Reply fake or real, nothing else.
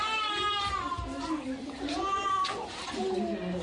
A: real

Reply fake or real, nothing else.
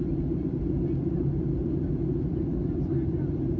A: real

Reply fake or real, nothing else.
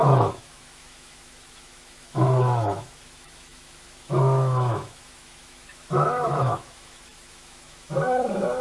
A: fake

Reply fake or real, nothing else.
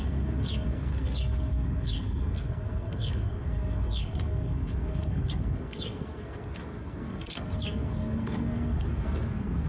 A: fake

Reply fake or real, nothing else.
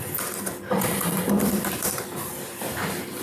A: fake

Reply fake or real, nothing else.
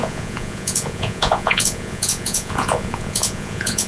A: fake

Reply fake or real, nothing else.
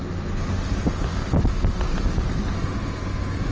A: real